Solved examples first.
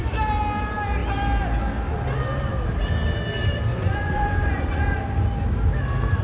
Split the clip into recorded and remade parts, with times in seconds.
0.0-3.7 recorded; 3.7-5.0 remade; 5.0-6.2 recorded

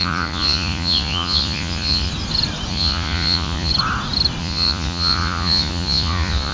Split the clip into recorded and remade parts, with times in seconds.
0.0-2.1 remade; 2.1-2.7 recorded; 2.7-3.7 remade; 3.7-4.4 recorded; 4.4-6.5 remade